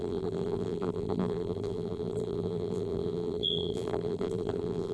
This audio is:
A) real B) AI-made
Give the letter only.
B